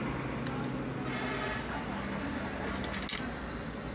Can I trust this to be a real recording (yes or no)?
yes